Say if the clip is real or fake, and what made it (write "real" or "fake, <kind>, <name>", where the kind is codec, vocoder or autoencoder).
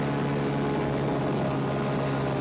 real